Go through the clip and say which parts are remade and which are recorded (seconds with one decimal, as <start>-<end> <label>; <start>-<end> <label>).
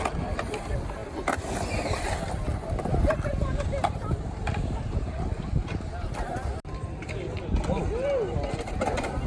0.0-9.3 recorded